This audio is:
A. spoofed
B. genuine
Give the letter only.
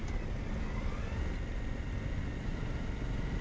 B